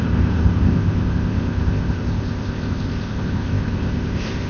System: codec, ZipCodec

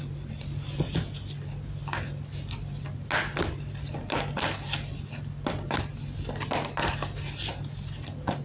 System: none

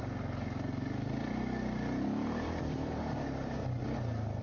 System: none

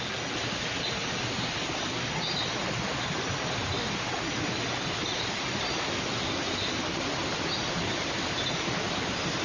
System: none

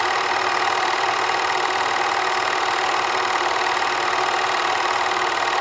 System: none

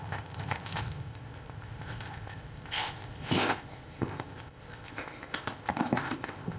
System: codec, ZipCodec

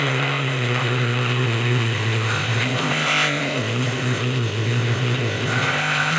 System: codec, ZipCodec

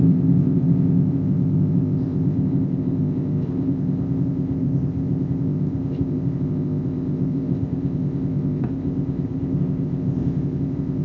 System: codec, ZipCodec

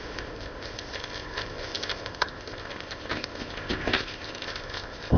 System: codec, ZipCodec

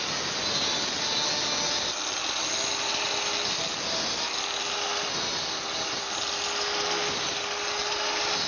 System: none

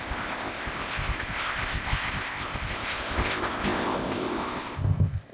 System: codec, ZipCodec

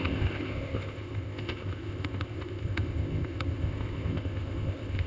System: codec, ZipCodec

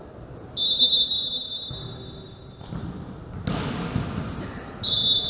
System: none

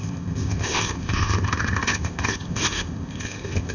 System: codec, ZipCodec